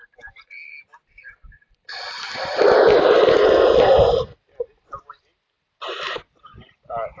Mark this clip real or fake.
fake